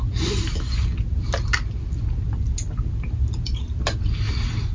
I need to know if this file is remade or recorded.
recorded